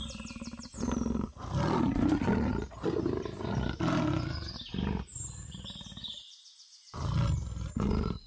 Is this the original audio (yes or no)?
yes